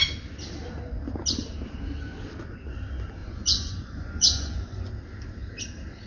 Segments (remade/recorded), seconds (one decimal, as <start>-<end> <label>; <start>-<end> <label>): 0.0-3.2 recorded; 3.2-4.9 remade; 4.9-6.1 recorded